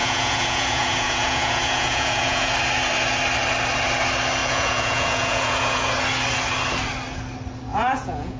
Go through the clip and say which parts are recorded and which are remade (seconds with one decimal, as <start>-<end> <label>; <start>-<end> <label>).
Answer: 0.0-2.5 remade; 2.5-4.4 recorded; 4.4-5.9 remade; 5.9-7.7 recorded; 7.7-8.4 remade